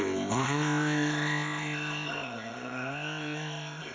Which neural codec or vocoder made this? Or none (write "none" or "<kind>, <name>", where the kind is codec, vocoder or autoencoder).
codec, ZipCodec